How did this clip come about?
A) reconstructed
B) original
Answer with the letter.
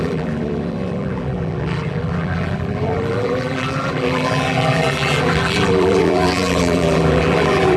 A